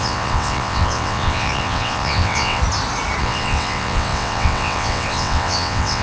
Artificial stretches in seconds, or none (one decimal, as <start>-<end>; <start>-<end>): 0.0-2.6; 3.2-6.0